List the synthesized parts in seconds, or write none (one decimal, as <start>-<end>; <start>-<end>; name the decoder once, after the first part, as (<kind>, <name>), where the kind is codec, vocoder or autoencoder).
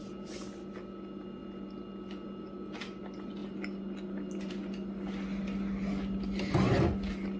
none